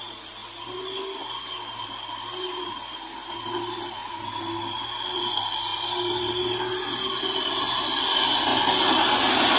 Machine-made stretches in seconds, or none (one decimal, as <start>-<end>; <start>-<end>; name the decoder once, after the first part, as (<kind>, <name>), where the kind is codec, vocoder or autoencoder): 0.4-3.4 (vocoder, BigVGAN v2); 4.0-5.2